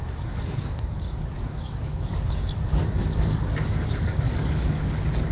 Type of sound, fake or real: fake